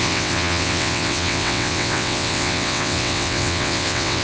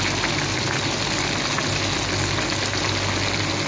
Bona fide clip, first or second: second